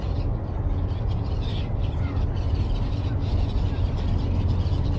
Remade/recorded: recorded